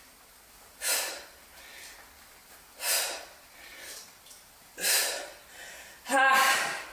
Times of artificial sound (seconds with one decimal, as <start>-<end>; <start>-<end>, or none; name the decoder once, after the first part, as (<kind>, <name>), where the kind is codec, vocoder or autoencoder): none

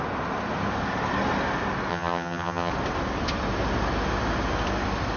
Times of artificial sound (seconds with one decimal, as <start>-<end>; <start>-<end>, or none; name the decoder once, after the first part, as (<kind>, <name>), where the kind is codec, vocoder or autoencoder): 1.9-2.7 (vocoder, HiFi-GAN)

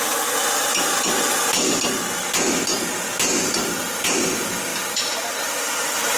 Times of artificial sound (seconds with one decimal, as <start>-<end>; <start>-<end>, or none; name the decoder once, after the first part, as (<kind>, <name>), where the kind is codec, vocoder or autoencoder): none

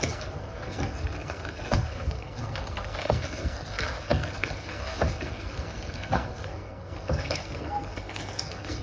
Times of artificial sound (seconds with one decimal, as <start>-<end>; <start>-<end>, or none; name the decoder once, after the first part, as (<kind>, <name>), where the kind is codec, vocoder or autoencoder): 0.0-8.8 (codec, SNAC)